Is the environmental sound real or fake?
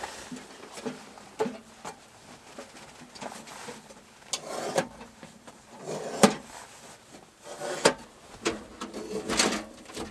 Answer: real